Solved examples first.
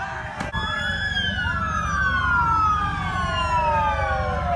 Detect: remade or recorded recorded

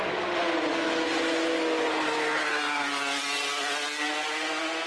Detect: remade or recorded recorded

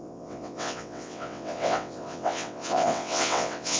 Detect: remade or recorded remade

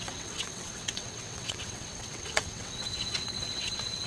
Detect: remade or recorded remade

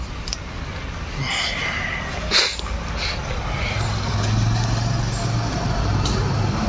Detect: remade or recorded recorded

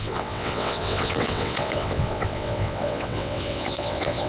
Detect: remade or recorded remade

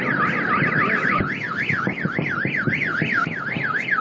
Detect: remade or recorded recorded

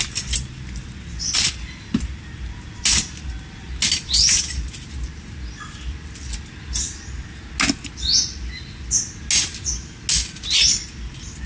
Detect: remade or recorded recorded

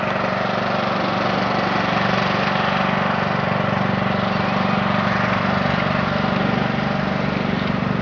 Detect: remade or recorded recorded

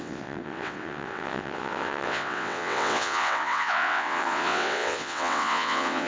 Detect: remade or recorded remade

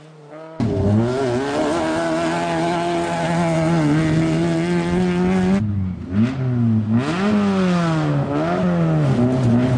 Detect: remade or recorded recorded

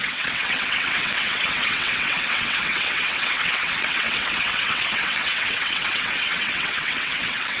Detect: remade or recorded remade